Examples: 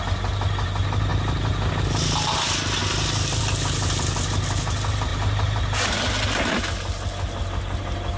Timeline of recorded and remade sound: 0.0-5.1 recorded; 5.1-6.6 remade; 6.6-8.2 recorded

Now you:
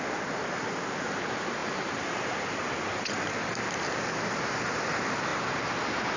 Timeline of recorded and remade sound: 0.0-1.6 recorded; 1.6-4.1 remade; 4.1-6.2 recorded

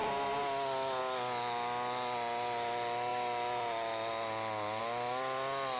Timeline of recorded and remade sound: 0.0-5.8 recorded

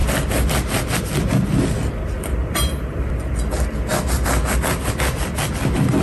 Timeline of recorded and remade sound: 0.0-2.4 recorded; 2.4-3.3 remade; 3.3-6.0 recorded

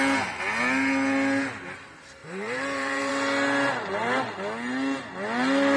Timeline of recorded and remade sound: 0.0-2.2 recorded; 2.2-3.1 remade; 3.1-5.8 recorded

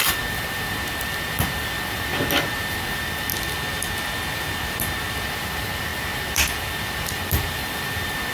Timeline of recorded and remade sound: 0.0-3.3 remade; 3.3-5.3 recorded; 5.3-8.3 remade

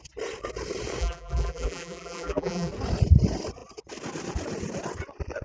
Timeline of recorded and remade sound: 0.0-1.0 recorded; 1.0-2.7 remade; 2.7-5.4 recorded